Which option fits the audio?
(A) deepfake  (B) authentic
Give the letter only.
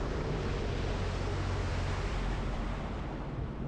B